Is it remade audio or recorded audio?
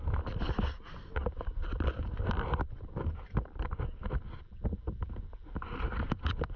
recorded